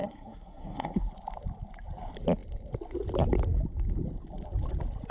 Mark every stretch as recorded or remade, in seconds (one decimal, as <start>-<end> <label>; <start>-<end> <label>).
0.0-1.1 remade; 1.1-5.1 recorded